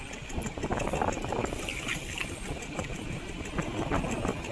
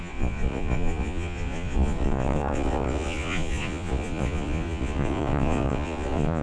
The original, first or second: first